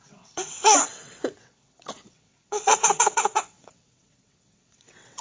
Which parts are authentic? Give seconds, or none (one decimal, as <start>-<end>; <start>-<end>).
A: none